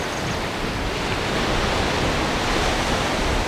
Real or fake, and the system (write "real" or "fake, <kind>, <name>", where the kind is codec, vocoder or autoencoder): real